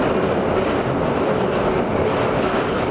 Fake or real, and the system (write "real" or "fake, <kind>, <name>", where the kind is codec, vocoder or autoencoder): real